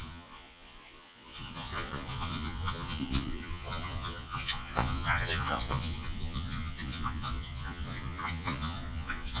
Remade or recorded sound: remade